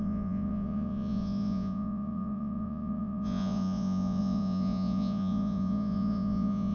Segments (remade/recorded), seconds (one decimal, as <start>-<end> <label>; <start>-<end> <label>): 0.0-6.7 remade